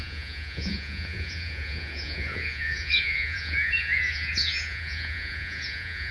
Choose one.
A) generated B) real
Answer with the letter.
A